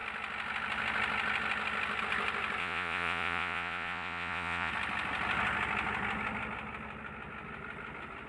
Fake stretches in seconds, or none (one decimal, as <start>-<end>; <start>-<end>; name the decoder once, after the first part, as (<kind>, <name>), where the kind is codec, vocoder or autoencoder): 2.6-4.7 (vocoder, Vocos)